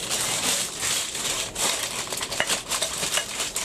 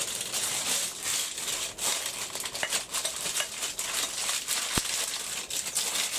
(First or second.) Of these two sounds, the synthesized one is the first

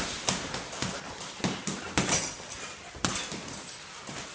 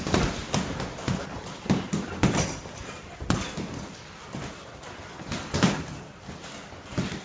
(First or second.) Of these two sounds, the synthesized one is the second